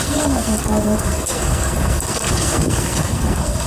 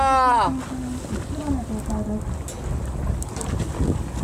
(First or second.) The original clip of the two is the second